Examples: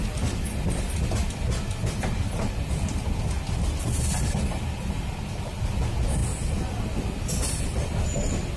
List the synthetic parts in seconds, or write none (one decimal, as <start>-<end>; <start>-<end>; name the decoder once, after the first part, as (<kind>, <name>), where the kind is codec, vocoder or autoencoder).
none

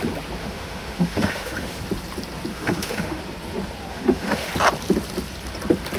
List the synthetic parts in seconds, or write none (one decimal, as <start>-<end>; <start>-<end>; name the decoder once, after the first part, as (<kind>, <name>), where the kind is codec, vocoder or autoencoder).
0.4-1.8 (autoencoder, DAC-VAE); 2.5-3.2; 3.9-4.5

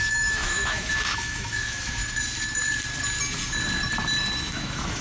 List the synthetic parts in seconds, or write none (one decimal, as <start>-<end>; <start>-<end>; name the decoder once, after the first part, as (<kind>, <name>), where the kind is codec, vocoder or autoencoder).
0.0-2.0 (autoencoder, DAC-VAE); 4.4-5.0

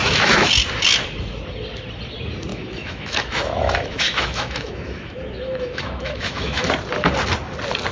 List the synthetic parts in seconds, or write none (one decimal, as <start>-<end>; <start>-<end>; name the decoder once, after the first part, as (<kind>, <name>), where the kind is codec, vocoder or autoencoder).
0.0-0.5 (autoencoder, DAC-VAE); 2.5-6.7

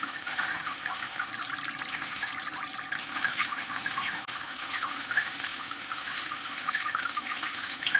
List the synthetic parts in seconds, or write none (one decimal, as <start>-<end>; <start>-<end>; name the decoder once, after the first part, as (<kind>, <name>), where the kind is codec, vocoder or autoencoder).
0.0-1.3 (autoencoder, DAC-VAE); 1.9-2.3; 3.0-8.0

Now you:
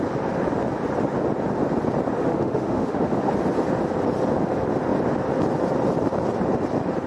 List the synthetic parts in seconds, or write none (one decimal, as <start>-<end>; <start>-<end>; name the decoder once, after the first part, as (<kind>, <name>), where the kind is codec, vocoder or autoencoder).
2.2-3.3 (autoencoder, DAC-VAE)